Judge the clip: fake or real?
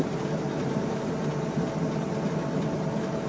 real